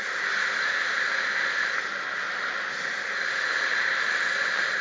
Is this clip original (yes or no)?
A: yes